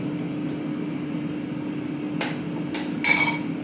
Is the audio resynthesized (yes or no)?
no